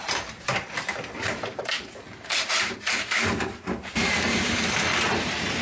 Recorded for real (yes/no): no